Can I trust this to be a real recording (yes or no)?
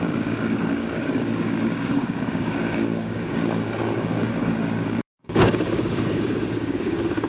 no